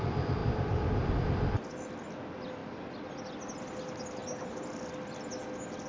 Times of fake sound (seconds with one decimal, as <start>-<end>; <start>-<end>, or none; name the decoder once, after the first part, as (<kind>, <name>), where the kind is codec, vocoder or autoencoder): 0.4-1.1 (vocoder, BigVGAN v2); 4.2-4.9